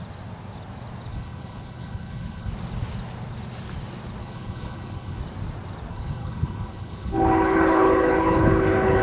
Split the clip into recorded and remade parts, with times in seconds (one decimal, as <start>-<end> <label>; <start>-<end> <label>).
0.0-1.1 recorded; 1.1-2.5 remade; 2.5-4.2 recorded; 4.2-5.2 remade; 5.2-5.9 recorded; 5.9-9.0 remade